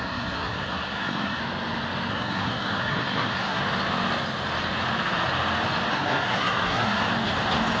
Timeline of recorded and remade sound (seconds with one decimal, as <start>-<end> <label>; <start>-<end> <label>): 0.0-1.4 remade; 1.4-2.1 recorded; 2.1-3.6 remade; 3.6-5.9 recorded; 5.9-7.1 remade; 7.1-7.8 recorded